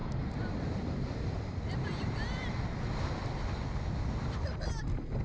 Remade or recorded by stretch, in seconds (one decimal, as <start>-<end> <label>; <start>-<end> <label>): 0.0-2.7 remade; 2.7-5.2 recorded